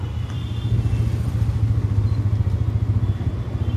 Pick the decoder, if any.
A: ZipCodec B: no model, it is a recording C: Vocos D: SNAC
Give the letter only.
B